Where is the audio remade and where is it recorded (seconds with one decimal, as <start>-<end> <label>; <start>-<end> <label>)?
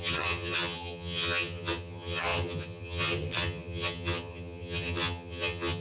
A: 0.0-5.8 remade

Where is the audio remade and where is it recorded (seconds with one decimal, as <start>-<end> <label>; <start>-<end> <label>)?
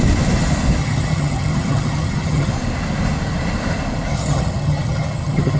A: 0.0-0.8 recorded; 0.8-2.5 remade; 2.5-4.1 recorded; 4.1-5.6 remade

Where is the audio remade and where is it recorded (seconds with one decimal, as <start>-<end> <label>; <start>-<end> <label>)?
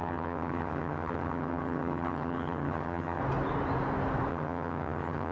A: 0.0-3.2 remade; 3.2-4.3 recorded; 4.3-5.3 remade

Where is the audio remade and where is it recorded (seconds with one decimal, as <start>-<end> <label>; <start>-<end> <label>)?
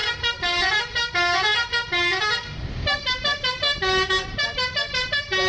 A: 0.0-5.5 recorded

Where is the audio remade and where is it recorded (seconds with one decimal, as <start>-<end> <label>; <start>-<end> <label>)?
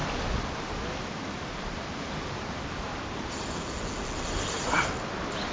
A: 0.0-5.5 recorded